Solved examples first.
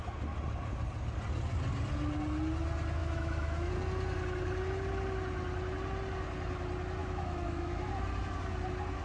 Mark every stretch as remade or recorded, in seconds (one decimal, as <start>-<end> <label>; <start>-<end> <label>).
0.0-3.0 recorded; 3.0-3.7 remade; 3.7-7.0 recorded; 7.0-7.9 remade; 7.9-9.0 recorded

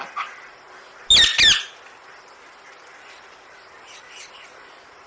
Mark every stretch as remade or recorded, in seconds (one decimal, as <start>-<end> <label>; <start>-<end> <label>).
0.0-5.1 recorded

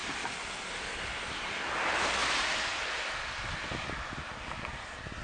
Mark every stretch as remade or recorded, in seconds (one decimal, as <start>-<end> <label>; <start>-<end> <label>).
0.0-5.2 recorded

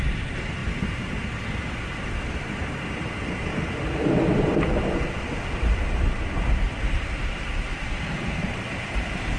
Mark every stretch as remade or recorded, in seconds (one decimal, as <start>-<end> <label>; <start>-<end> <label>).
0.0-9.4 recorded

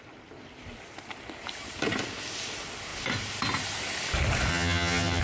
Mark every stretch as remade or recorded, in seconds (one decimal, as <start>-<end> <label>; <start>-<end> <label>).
0.0-4.5 recorded; 4.5-5.2 remade

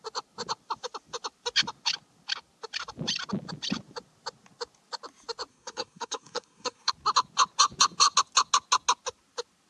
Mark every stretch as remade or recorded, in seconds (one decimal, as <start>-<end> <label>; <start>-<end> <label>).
0.0-5.5 recorded; 5.5-6.9 remade; 6.9-9.7 recorded